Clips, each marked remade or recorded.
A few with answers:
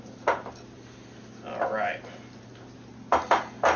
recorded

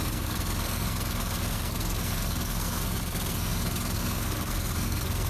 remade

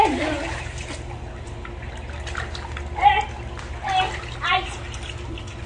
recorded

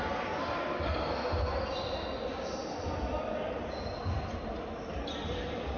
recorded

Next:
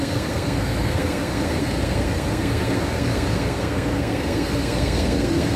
remade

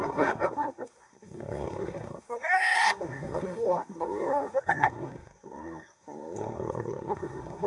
remade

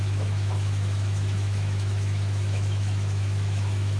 remade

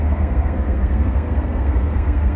remade